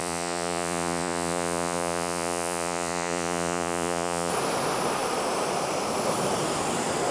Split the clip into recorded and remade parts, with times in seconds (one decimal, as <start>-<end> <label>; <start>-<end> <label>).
0.0-4.3 remade; 4.3-7.1 recorded

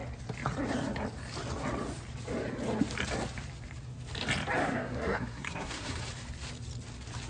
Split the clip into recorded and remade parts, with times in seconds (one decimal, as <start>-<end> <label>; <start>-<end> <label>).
0.0-4.6 recorded; 4.6-6.0 remade; 6.0-7.3 recorded

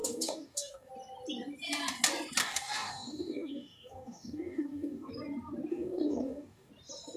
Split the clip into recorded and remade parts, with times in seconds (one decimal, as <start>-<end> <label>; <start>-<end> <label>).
0.0-0.9 remade; 0.9-2.4 recorded; 2.4-5.1 remade; 5.1-5.7 recorded; 5.7-6.7 remade; 6.7-7.2 recorded

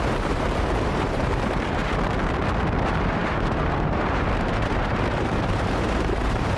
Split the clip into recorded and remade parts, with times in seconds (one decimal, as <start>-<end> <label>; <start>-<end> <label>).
0.0-1.8 remade; 1.8-2.8 recorded; 2.8-6.6 remade